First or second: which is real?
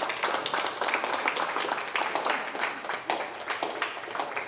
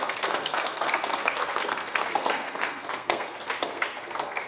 first